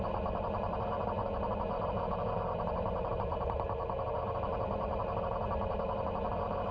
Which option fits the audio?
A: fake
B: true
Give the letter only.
B